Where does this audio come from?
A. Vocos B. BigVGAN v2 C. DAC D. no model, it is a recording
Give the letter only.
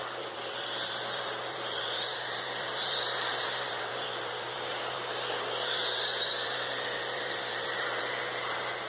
B